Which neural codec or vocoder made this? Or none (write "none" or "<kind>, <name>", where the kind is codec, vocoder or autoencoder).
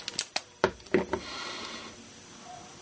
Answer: none